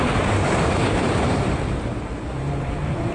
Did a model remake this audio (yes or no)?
yes